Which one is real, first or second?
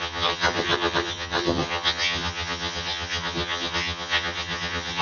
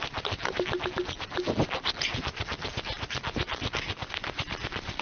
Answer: second